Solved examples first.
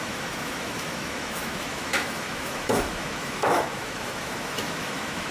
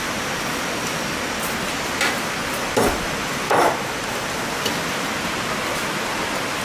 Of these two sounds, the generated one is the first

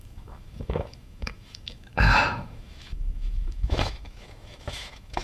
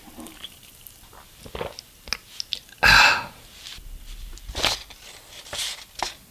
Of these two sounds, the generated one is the first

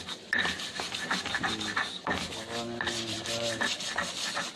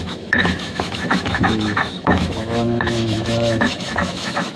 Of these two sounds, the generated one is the second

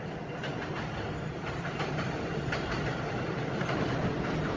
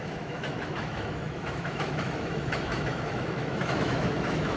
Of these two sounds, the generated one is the second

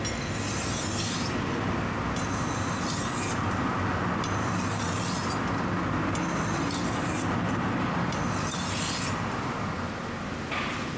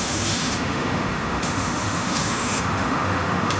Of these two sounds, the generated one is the second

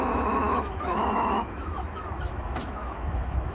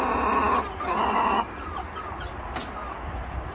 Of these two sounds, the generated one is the first